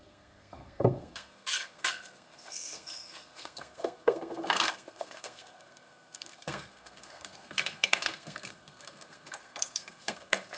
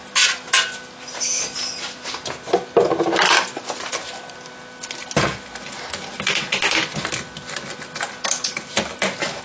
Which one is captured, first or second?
second